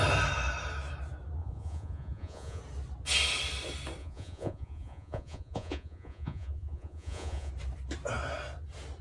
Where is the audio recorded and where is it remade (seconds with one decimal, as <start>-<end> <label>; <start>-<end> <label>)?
0.0-1.4 recorded; 1.4-2.6 remade; 2.6-4.0 recorded; 4.0-7.5 remade; 7.5-9.0 recorded